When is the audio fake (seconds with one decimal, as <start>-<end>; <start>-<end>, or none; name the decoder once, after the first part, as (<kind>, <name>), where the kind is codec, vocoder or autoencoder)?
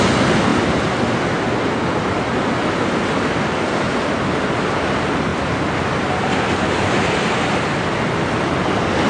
0.5-1.2 (vocoder, BigVGAN v2); 3.9-4.8